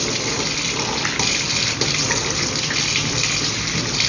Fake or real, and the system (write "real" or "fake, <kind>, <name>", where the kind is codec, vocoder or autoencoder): real